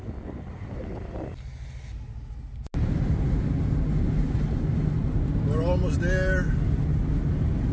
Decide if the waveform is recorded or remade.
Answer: recorded